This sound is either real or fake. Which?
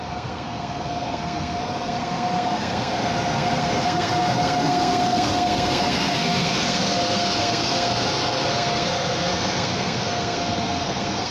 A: fake